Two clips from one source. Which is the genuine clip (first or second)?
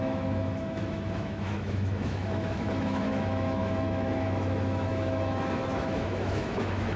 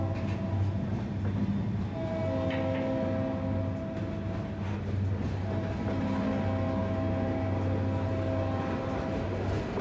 second